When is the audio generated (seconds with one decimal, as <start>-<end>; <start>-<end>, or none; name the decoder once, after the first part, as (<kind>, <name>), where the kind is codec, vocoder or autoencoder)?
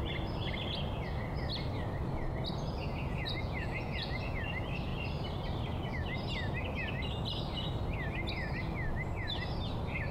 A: 2.8-4.4 (vocoder, Vocos)